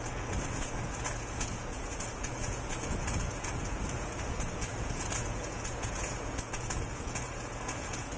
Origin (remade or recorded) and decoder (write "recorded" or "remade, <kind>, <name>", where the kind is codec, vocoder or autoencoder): remade, vocoder, Vocos